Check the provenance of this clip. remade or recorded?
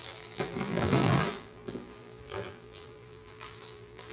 remade